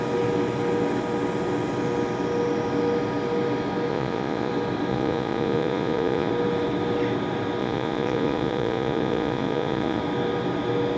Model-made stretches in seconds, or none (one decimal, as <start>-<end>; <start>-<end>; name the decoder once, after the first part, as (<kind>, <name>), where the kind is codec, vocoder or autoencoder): 3.9-4.5 (vocoder, Vocos); 4.9-6.3; 7.6-10.0